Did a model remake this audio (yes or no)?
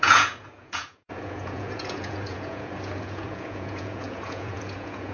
yes